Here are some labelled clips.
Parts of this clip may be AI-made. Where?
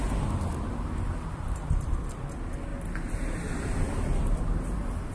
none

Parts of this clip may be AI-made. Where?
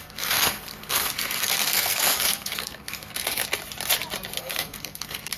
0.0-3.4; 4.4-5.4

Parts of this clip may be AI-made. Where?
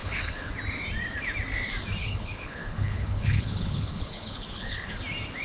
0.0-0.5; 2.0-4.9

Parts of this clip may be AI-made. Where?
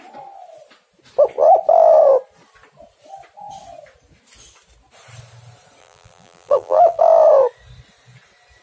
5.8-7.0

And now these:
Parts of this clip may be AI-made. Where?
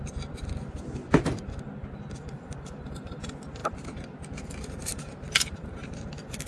none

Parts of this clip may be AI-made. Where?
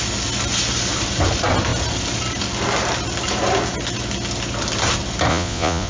5.3-5.9